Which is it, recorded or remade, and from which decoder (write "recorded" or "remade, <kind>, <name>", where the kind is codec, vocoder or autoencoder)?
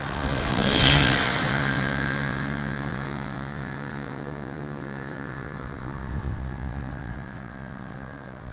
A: remade, vocoder, WaveNeXt